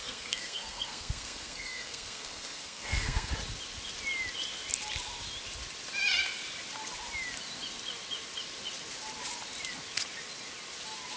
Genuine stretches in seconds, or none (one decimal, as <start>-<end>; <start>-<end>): 3.3-11.2

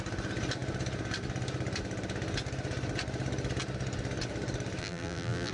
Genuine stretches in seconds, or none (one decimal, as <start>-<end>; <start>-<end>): 0.0-4.8

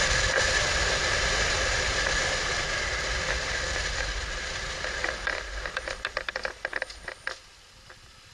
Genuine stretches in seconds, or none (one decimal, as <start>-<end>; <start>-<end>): 0.0-8.3

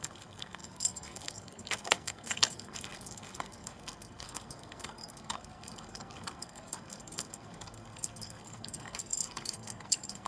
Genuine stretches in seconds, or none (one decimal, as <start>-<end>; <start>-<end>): none